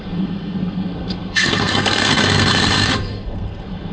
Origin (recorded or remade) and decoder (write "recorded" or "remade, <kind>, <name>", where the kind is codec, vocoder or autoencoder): remade, codec, SNAC